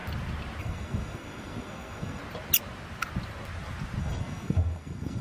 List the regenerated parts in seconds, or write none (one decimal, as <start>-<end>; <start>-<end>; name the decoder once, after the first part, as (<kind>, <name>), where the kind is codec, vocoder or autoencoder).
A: 0.6-2.2 (codec, SNAC); 4.0-5.2